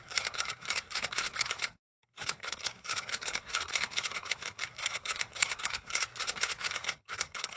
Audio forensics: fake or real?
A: fake